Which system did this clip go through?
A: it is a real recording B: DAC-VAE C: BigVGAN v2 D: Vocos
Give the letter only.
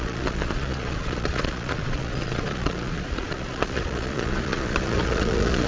D